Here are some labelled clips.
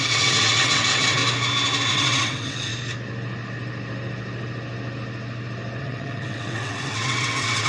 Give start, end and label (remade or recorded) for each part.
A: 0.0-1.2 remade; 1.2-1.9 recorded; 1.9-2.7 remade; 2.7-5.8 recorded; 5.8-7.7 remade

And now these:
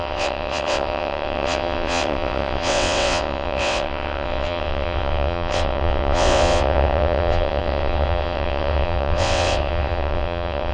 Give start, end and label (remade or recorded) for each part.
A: 0.0-10.7 remade

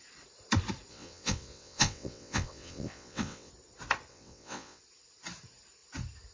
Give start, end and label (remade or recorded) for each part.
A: 0.0-0.9 recorded; 0.9-3.5 remade; 3.5-4.1 recorded; 4.1-4.8 remade; 4.8-6.3 recorded

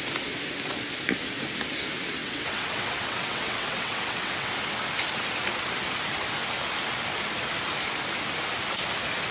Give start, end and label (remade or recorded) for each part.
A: 0.0-2.2 recorded; 2.2-4.5 remade; 4.5-9.3 recorded

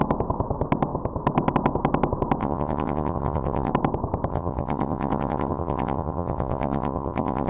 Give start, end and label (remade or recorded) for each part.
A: 0.0-2.4 recorded; 2.4-3.7 remade; 3.7-4.3 recorded; 4.3-7.5 remade

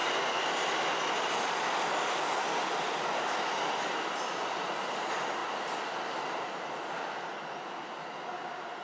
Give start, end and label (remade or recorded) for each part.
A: 0.0-8.8 recorded

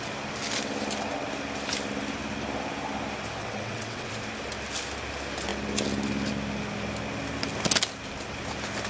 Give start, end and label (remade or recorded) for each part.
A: 0.0-3.4 recorded; 3.4-4.1 remade; 4.1-8.9 recorded